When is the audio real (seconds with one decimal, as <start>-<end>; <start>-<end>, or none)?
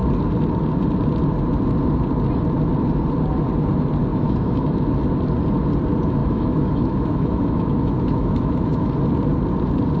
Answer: 0.0-4.1; 4.9-6.2; 8.9-10.0